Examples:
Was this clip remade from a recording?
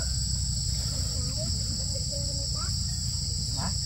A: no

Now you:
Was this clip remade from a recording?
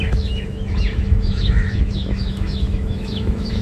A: yes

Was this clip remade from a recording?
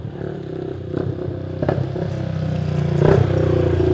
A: no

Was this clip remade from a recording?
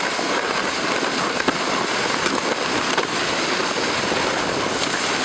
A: no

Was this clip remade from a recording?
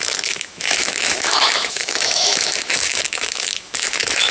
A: yes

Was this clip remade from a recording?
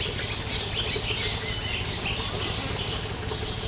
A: no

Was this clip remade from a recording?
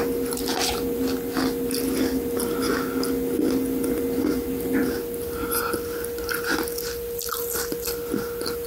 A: no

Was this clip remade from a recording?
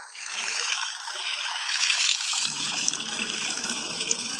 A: yes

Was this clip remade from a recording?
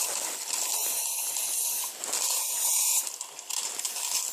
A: no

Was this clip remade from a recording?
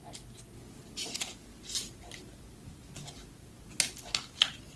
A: no